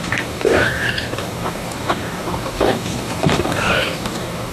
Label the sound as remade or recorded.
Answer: remade